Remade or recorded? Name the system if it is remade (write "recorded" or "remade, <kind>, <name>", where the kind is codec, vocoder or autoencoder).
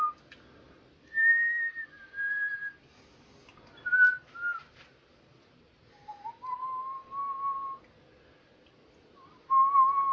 recorded